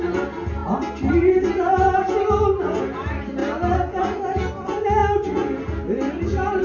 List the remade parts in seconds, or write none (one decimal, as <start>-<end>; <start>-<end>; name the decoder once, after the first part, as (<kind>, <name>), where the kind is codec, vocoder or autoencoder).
none